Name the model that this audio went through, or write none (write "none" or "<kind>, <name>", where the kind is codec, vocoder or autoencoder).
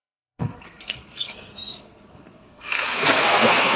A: codec, SNAC